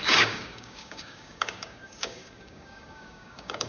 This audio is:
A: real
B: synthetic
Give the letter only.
B